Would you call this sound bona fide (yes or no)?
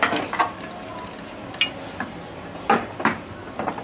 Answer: yes